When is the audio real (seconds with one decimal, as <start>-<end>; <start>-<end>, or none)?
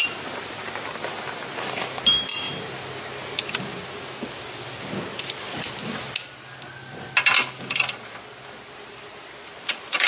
0.0-10.1